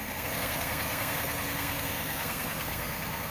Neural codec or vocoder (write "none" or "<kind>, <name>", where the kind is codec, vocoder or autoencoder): codec, SNAC